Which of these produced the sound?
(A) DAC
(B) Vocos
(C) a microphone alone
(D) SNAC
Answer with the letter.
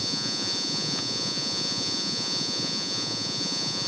B